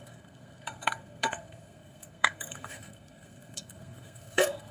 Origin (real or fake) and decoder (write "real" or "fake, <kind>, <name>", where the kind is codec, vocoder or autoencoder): fake, codec, SNAC